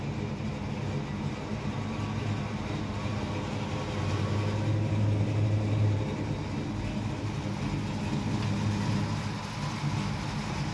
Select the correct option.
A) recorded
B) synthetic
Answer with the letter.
A